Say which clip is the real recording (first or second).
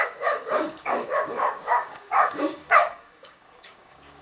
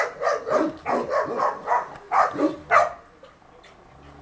second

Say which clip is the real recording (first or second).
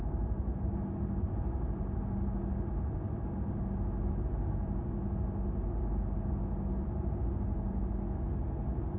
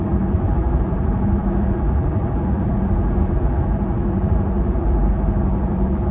first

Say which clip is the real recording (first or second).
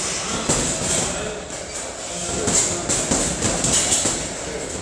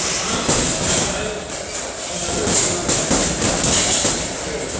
first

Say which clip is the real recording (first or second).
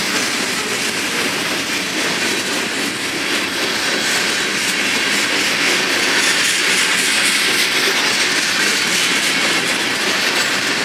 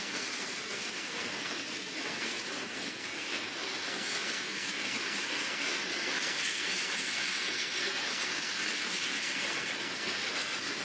first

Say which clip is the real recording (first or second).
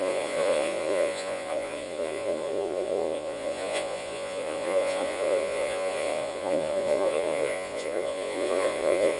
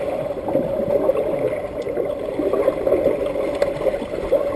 second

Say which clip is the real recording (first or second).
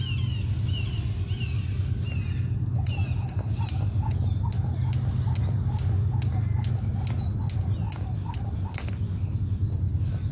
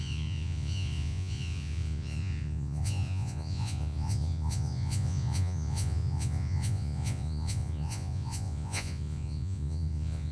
first